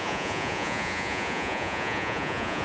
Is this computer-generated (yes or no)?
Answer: yes